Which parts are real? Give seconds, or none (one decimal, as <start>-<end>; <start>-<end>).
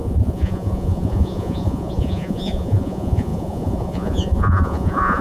none